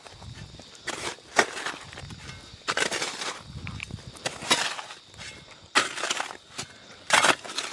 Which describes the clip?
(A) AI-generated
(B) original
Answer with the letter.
B